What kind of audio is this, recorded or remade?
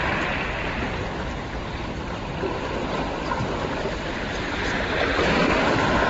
recorded